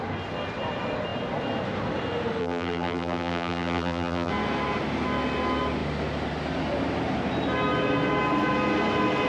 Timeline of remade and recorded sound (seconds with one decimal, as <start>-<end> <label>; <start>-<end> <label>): 0.0-2.4 recorded; 2.4-4.3 remade; 4.3-9.3 recorded